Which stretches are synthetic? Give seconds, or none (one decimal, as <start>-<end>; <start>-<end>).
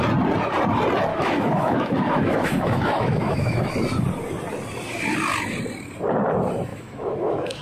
1.1-3.7; 6.7-7.6